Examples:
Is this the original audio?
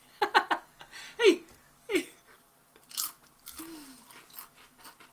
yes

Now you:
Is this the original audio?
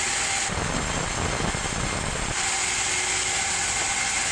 yes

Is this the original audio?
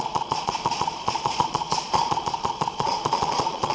no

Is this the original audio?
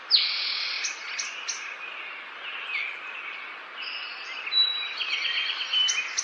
yes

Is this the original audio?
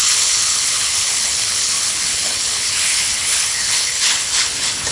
no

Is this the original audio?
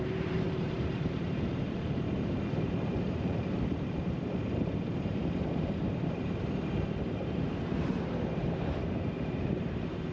no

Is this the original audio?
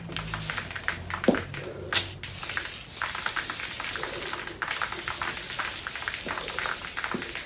yes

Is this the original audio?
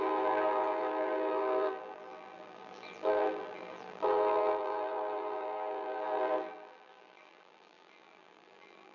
no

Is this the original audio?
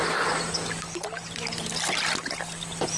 yes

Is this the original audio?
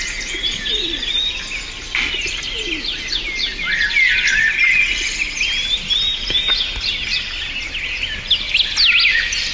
yes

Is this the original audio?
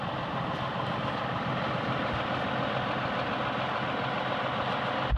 yes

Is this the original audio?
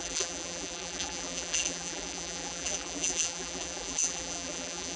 no